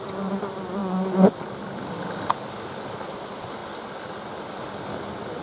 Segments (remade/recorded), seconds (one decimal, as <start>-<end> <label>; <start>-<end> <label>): 0.0-5.4 recorded